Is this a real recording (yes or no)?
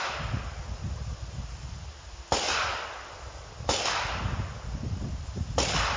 yes